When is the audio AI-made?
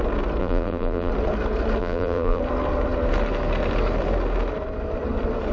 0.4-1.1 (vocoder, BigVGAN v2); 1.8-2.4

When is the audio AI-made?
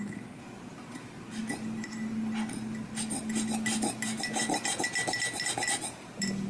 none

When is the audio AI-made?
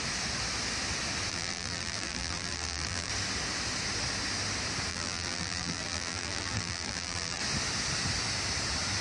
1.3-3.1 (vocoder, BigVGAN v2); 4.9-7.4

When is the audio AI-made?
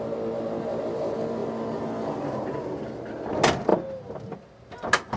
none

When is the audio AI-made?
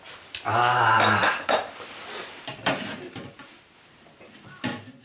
none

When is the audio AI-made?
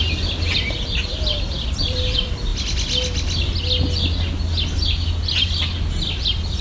0.0-2.5 (vocoder, BigVGAN v2)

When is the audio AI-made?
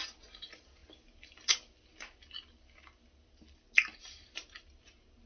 0.0-0.8 (vocoder, BigVGAN v2); 4.0-5.3